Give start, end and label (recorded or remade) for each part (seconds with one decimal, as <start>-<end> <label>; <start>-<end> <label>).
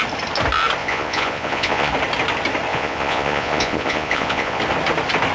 0.0-0.8 recorded; 0.8-1.9 remade; 1.9-2.7 recorded; 2.7-4.6 remade; 4.6-5.3 recorded